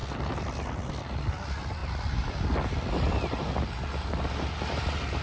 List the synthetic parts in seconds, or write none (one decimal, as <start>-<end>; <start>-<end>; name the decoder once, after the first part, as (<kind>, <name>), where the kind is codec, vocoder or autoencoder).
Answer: none